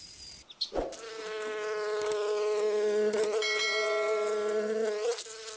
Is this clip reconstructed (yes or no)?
no